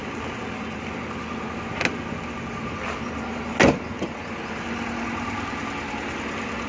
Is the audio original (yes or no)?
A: yes